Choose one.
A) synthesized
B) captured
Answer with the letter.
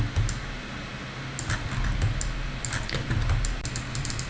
B